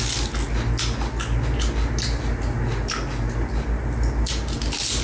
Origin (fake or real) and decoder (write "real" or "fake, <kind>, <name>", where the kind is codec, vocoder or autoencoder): real